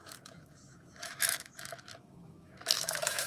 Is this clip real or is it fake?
fake